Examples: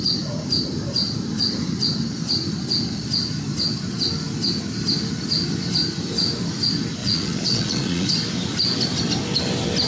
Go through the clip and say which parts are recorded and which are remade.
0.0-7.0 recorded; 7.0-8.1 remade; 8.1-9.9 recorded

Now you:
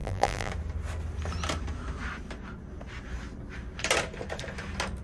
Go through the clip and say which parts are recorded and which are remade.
0.0-0.5 remade; 0.5-5.0 recorded

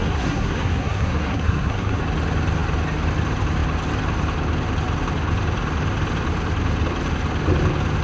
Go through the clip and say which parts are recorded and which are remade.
0.0-2.0 remade; 2.0-8.0 recorded